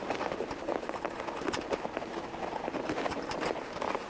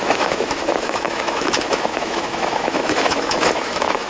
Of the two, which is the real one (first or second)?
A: first